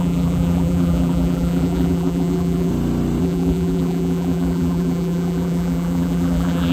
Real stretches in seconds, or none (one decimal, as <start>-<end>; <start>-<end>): 2.7-3.2